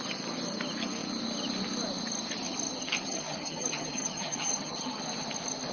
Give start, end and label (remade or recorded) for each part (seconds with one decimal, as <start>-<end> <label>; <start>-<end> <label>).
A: 0.0-3.0 recorded; 3.0-5.0 remade; 5.0-5.7 recorded